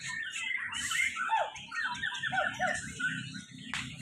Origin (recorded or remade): recorded